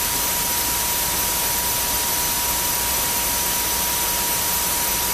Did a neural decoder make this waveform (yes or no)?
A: yes